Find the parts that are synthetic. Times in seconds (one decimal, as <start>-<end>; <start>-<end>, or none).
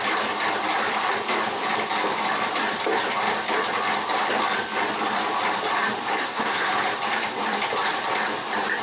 6.2-6.7